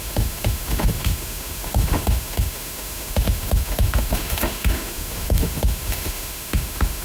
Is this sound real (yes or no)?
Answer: no